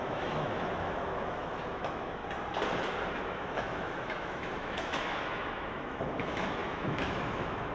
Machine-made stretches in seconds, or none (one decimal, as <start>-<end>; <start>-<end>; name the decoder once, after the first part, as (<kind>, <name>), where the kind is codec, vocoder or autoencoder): 0.0-2.2 (autoencoder, DAC-VAE); 3.1-7.7